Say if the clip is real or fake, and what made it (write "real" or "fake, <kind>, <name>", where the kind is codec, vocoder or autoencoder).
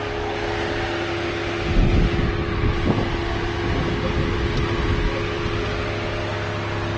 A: real